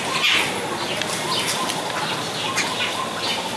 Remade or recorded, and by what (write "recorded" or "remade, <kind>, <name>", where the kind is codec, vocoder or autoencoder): recorded